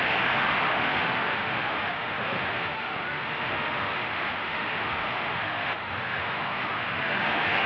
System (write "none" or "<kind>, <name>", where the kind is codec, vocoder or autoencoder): autoencoder, DAC-VAE